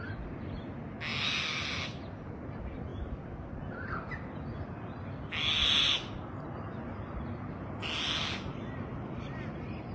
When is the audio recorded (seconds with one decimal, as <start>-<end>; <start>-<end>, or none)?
0.0-9.9